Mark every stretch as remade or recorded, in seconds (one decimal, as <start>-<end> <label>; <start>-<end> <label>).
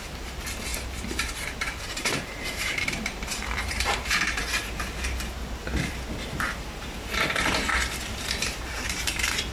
0.0-0.7 remade; 0.7-1.8 recorded; 1.8-4.4 remade; 4.4-6.3 recorded; 6.3-9.5 remade